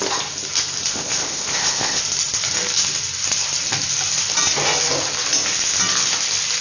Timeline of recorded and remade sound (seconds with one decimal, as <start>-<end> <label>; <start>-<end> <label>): 0.0-0.9 recorded; 0.9-2.0 remade; 2.0-6.6 recorded